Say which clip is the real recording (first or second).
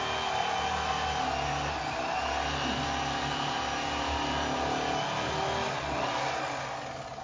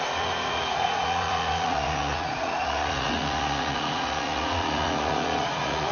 first